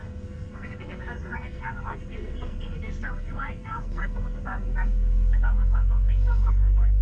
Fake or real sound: fake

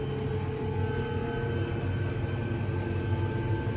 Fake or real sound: real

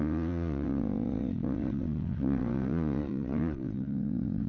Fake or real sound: fake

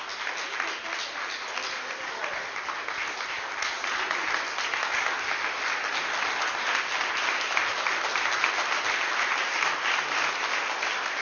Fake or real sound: real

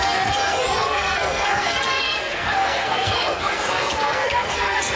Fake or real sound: fake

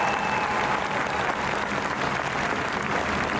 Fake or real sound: real